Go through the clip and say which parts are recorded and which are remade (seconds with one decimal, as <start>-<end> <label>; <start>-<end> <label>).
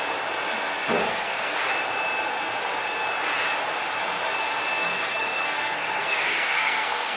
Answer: 0.0-1.0 recorded; 1.0-1.6 remade; 1.6-4.8 recorded; 4.8-7.2 remade